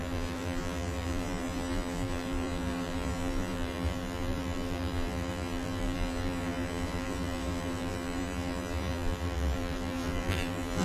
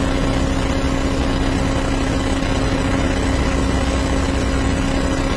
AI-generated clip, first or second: first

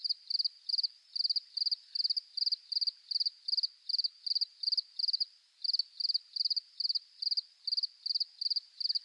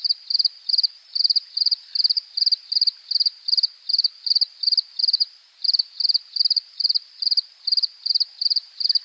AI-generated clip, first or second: second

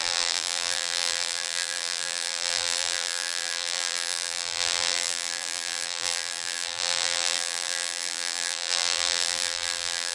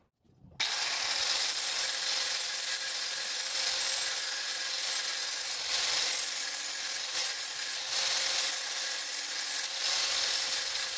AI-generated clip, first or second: first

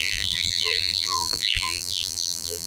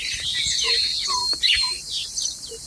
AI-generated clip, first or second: first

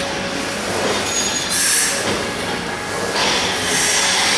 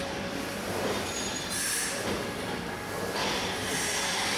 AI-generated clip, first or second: second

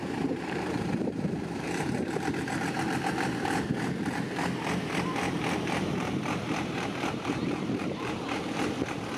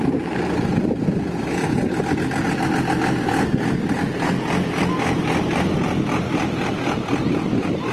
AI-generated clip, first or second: first